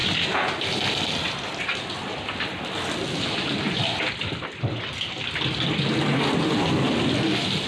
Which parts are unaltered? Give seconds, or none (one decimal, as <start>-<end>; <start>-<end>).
0.0-7.7